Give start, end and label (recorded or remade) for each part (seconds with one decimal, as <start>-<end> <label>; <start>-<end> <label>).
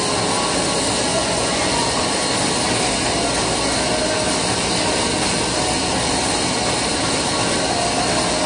0.0-1.1 recorded; 1.1-2.0 remade; 2.0-8.5 recorded